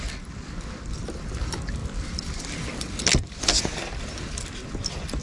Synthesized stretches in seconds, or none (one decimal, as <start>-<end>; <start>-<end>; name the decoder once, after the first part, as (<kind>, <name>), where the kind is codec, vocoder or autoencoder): none